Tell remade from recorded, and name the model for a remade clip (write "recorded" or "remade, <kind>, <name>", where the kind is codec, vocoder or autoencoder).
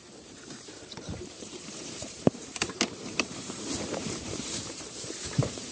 remade, vocoder, BigVGAN v2